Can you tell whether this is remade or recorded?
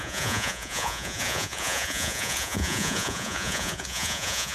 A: remade